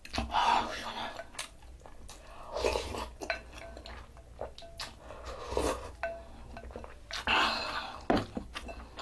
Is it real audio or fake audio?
real